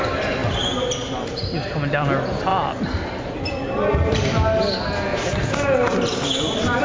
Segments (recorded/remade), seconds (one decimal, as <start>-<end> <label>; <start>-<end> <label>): 0.0-6.8 recorded